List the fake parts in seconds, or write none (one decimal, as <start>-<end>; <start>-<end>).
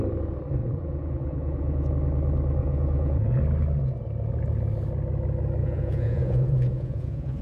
0.6-1.9; 2.6-3.4; 5.6-7.4